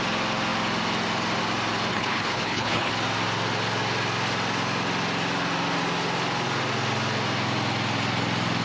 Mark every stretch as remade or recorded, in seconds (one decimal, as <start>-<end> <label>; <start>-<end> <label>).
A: 0.0-1.9 recorded; 1.9-2.9 remade; 2.9-8.6 recorded